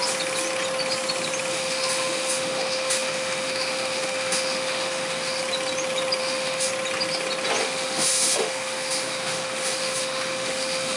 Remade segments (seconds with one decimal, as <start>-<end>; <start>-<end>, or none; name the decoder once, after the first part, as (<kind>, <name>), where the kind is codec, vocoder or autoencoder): 1.5-5.4 (autoencoder, DAC-VAE); 6.2-6.7; 7.6-11.0